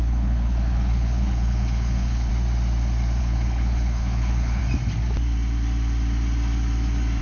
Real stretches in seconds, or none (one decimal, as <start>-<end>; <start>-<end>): 2.3-3.2; 4.6-7.2